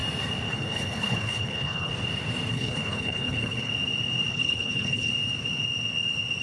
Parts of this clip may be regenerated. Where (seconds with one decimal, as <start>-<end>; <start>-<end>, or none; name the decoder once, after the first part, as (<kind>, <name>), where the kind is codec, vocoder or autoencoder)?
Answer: 0.5-1.9 (codec, HILCodec); 2.5-3.7; 4.3-5.1

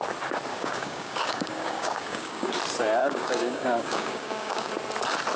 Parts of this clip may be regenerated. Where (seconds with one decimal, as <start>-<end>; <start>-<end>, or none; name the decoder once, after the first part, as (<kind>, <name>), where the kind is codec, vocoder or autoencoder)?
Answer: 0.5-2.6 (codec, DAC); 3.0-4.7